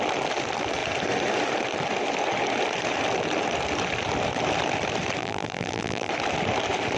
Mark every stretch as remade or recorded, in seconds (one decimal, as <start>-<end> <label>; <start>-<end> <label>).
0.0-5.2 recorded; 5.2-6.1 remade; 6.1-7.0 recorded